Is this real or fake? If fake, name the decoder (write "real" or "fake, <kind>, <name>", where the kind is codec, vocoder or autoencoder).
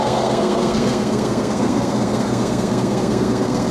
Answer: fake, codec, SNAC